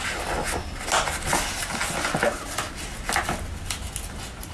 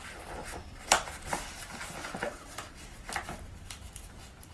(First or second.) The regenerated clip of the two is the second